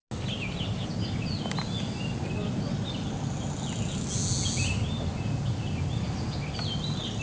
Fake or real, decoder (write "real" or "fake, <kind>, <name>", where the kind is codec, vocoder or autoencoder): real